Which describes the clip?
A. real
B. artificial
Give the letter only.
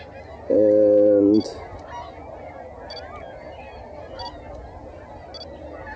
A